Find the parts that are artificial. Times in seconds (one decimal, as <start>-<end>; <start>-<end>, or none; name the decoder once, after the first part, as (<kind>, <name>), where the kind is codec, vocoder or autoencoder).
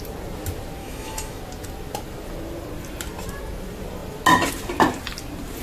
0.8-1.4 (autoencoder, DAC-VAE)